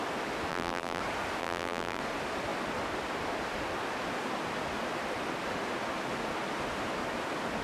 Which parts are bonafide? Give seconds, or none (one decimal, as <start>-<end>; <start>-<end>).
0.0-0.5; 1.0-1.4; 2.0-7.6